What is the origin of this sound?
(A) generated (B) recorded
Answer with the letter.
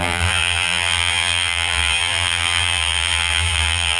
A